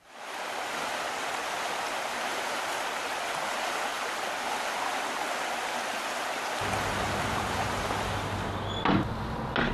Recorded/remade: recorded